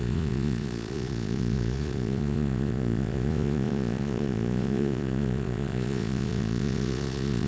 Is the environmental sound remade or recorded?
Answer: remade